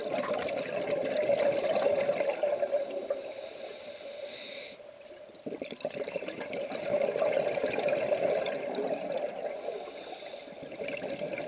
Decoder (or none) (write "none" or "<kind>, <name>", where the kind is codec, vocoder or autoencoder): vocoder, BigVGAN v2